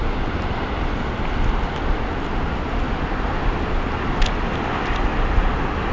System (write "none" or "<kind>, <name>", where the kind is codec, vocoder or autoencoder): none